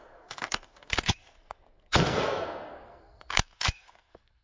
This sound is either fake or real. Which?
fake